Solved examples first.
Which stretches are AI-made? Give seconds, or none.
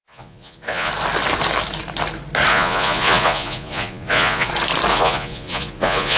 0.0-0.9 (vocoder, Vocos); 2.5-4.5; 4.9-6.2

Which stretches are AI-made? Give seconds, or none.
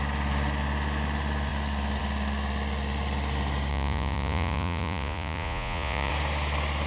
3.7-6.1 (vocoder, Vocos)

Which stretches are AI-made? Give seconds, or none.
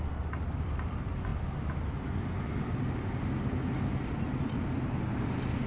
none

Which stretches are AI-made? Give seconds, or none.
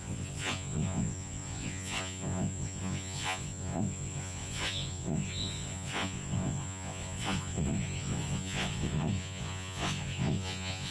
0.0-10.9 (vocoder, Vocos)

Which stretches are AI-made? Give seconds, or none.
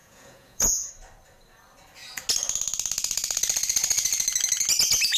0.0-0.9 (vocoder, Vocos)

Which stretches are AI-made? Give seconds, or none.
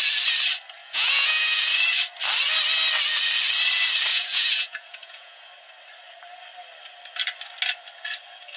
0.8-1.7 (vocoder, Vocos); 4.1-5.5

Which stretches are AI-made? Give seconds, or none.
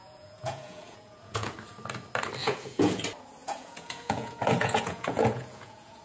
0.0-1.5 (vocoder, Vocos); 2.4-3.0; 3.4-6.0